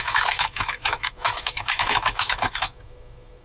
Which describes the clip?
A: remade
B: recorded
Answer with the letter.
A